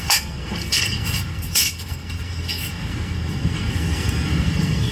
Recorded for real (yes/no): no